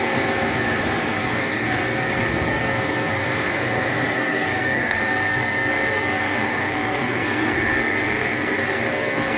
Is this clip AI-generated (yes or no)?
yes